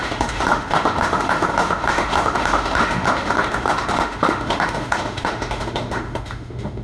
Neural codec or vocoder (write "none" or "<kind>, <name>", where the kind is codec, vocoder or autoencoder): autoencoder, DAC-VAE